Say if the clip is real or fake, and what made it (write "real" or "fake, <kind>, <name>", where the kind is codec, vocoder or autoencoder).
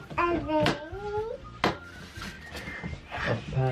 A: real